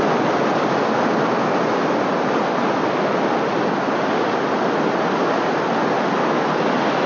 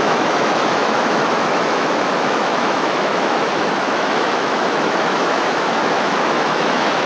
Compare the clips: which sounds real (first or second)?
first